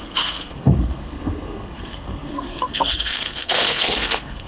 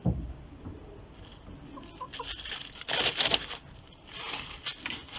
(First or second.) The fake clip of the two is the first